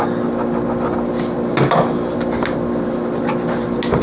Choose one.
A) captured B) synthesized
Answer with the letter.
A